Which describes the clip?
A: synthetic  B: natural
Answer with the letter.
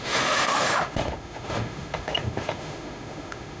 A